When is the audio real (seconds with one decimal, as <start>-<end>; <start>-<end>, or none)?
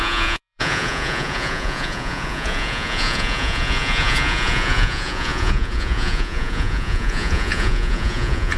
none